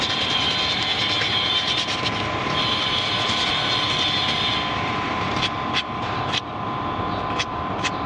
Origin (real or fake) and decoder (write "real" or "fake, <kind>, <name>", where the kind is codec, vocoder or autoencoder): fake, vocoder, BigVGAN v2